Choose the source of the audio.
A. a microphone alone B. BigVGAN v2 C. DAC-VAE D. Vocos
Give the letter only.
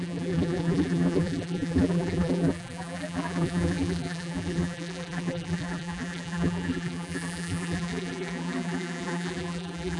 B